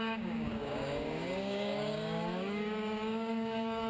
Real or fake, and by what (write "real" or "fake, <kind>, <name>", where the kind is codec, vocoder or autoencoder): fake, codec, DAC